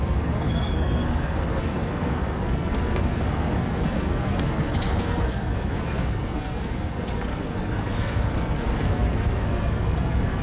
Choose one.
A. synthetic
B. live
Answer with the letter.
A